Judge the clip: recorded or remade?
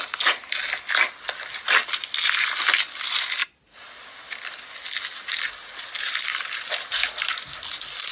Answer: recorded